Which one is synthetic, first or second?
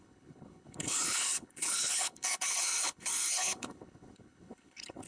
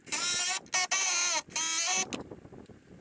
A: first